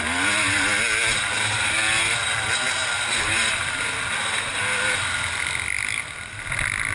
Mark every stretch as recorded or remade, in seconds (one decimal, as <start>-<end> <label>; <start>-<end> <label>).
0.0-3.4 recorded; 3.4-4.6 remade; 4.6-6.9 recorded